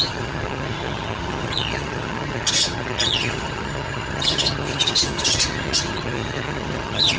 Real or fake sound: fake